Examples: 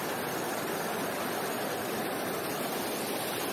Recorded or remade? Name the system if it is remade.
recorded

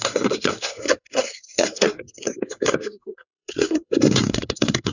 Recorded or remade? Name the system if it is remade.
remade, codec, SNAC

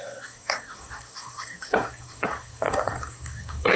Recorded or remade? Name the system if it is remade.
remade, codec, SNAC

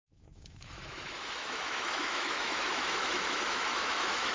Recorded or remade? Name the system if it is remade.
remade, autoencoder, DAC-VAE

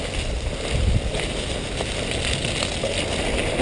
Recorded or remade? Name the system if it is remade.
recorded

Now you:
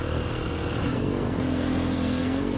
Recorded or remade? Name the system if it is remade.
remade, codec, SNAC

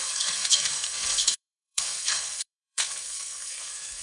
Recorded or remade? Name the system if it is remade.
remade, codec, SNAC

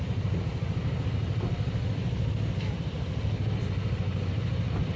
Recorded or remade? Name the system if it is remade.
recorded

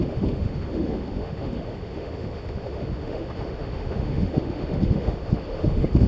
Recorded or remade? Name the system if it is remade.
remade, autoencoder, DAC-VAE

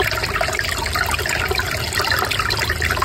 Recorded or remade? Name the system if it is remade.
recorded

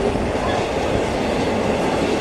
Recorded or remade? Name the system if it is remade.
remade, vocoder, BigVGAN v2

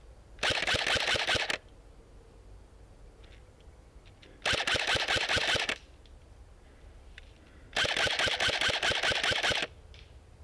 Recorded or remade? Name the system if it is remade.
recorded